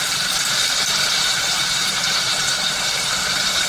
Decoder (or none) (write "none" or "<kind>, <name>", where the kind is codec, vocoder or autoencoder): vocoder, BigVGAN v2